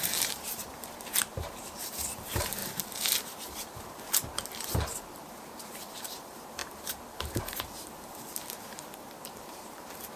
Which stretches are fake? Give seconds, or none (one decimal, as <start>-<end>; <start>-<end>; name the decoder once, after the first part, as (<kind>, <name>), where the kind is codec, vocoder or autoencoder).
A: 0.0-10.2 (vocoder, BigVGAN v2)